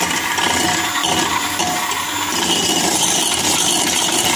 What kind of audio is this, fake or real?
real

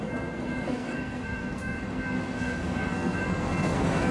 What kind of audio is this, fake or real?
fake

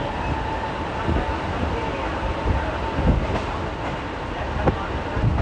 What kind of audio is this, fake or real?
real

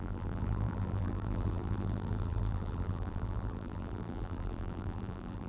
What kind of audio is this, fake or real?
fake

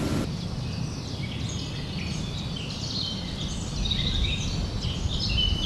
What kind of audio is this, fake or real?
real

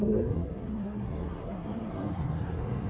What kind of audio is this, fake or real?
fake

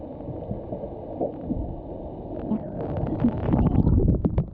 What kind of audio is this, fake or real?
real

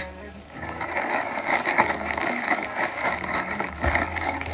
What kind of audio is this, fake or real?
fake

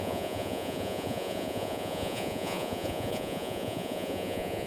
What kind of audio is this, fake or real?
fake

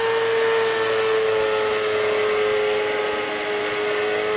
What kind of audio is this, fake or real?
real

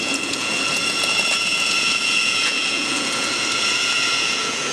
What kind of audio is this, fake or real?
fake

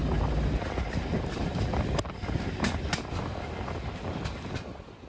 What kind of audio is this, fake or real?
real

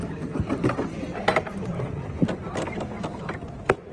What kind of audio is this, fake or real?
real